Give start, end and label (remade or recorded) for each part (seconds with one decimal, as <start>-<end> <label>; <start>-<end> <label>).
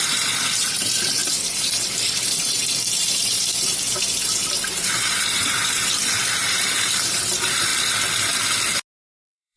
0.0-7.7 remade; 7.7-9.1 recorded; 9.1-9.6 remade